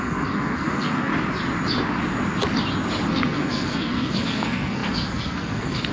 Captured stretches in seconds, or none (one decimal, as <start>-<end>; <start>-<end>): 1.1-3.1